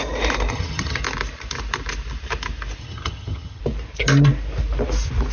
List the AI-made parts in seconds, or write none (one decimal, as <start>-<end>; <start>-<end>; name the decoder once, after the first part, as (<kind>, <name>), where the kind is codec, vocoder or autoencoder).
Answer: 0.5-1.0 (vocoder, HiFi-GAN); 2.8-3.6